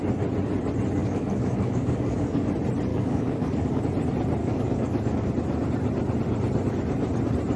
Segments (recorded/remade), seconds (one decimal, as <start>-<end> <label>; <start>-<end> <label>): 0.0-1.0 recorded; 1.0-2.5 remade; 2.5-2.9 recorded; 2.9-3.8 remade; 3.8-4.4 recorded; 4.4-5.3 remade; 5.3-7.6 recorded